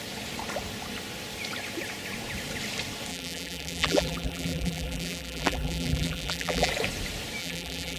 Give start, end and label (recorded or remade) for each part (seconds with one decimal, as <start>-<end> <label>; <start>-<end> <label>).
0.0-3.1 recorded; 3.1-6.7 remade; 6.7-7.4 recorded; 7.4-8.0 remade